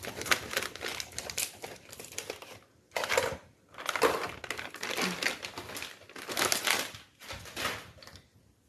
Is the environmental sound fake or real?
real